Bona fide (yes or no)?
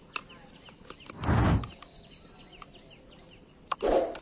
yes